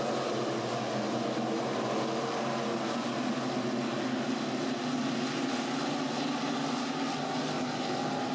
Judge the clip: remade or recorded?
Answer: recorded